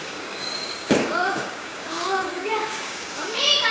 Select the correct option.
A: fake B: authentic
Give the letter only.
A